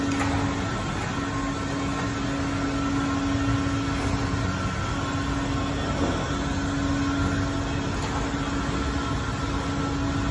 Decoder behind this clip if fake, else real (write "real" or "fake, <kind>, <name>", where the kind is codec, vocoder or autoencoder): real